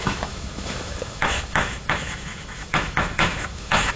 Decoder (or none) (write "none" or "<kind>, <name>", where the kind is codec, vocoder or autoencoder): autoencoder, DAC-VAE